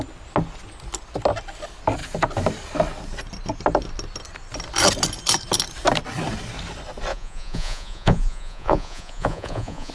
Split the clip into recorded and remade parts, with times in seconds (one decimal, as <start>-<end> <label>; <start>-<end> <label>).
0.0-7.1 recorded; 7.1-9.9 remade

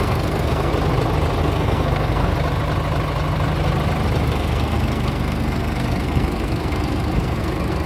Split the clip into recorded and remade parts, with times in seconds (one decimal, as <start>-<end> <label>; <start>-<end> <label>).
0.0-0.7 remade; 0.7-1.4 recorded; 1.4-2.3 remade; 2.3-4.3 recorded; 4.3-7.9 remade